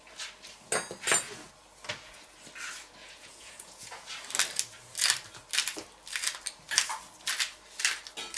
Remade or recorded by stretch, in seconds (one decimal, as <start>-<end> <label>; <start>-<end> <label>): 0.0-3.0 recorded; 3.0-4.1 remade; 4.1-8.4 recorded